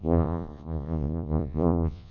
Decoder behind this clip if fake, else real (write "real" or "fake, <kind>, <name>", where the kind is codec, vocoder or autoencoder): fake, vocoder, Vocos